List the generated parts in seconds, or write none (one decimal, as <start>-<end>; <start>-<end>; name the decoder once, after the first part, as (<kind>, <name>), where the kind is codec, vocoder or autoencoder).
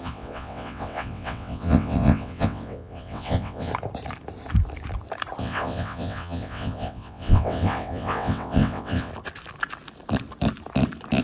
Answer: 0.0-3.7 (vocoder, WaveNeXt); 5.4-9.1